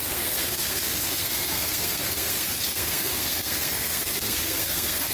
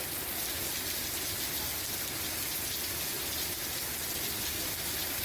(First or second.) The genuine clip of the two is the second